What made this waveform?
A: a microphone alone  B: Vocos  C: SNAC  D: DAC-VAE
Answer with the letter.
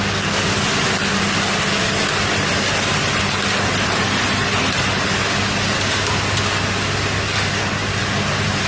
A